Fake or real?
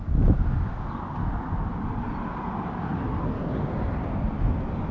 real